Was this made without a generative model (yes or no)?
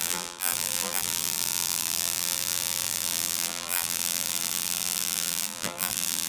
no